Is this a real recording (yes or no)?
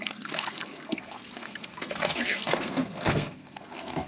no